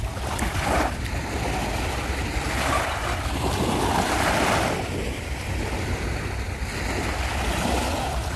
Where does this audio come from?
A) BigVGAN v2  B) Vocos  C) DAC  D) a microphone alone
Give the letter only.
A